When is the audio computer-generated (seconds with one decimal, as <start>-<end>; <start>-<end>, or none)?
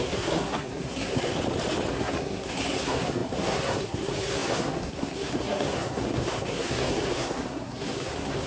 0.0-1.3; 1.9-8.5